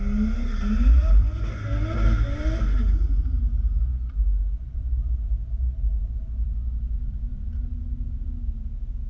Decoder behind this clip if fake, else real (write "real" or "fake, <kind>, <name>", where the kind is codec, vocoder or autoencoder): real